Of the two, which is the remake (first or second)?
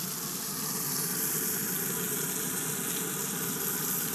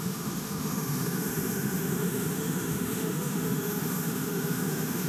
second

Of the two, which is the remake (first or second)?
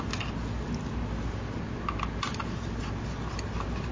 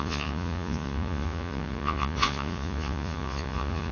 second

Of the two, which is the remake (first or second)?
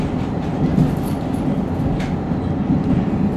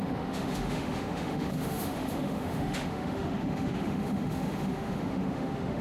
second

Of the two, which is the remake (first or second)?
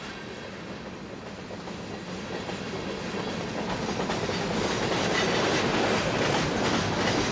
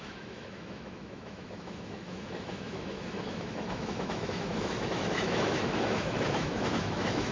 second